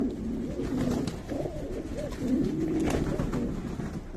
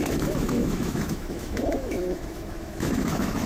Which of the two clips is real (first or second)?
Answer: first